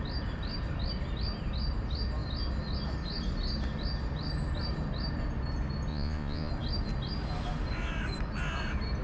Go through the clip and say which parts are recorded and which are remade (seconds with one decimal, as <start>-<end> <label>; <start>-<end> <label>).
0.0-5.9 recorded; 5.9-6.5 remade; 6.5-9.0 recorded